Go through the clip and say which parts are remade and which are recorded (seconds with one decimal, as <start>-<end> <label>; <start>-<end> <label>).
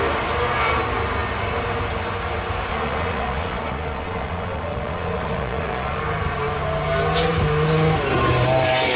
0.0-2.7 recorded; 2.7-6.0 remade; 6.0-9.0 recorded